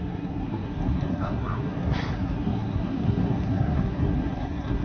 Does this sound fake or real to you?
fake